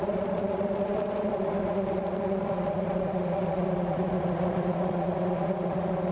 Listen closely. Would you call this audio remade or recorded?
remade